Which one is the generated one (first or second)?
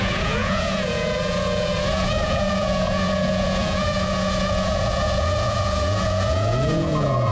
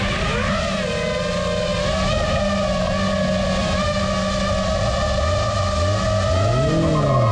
first